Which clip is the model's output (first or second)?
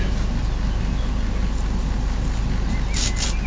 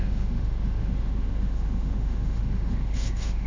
second